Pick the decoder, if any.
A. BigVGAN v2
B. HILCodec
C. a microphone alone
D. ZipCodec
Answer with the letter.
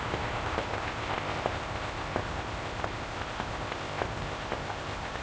D